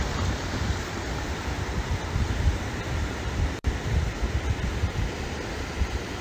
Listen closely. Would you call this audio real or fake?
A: fake